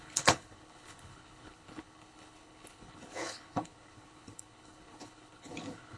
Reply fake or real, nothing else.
fake